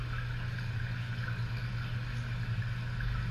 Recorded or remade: recorded